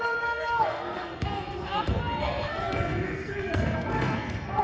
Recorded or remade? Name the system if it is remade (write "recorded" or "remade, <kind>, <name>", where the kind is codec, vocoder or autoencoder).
remade, codec, SNAC